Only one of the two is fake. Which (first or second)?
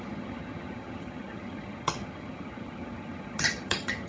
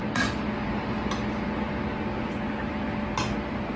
first